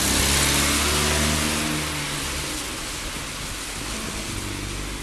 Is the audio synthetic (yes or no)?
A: no